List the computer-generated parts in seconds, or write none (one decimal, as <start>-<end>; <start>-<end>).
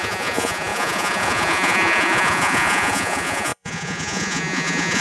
0.0-5.0